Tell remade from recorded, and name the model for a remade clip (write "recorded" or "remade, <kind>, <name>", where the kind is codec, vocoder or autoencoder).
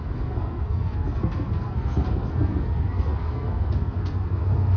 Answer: remade, codec, SNAC